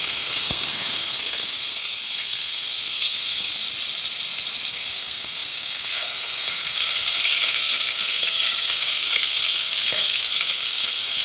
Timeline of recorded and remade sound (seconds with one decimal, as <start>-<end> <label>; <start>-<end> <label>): 0.0-3.6 remade; 3.6-4.7 recorded; 4.7-11.2 remade